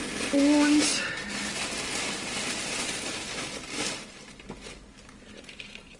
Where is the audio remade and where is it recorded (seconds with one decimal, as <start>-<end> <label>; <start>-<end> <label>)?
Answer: 0.0-6.0 recorded